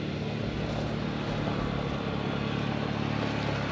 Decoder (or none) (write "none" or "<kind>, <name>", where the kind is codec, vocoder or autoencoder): none